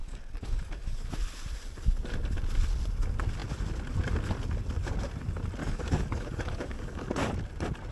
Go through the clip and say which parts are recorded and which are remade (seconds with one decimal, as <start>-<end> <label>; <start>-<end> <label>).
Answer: 0.0-1.1 remade; 1.1-5.6 recorded; 5.6-7.1 remade; 7.1-7.9 recorded